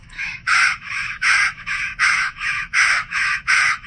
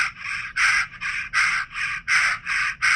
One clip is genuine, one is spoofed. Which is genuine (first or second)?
second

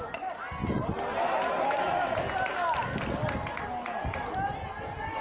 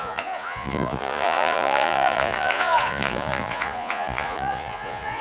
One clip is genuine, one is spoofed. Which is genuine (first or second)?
first